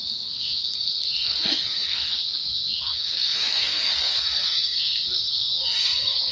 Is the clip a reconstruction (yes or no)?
yes